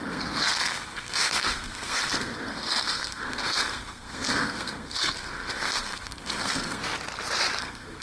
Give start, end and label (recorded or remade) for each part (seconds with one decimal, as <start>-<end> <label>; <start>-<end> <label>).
0.0-6.8 remade; 6.8-7.6 recorded; 7.6-8.0 remade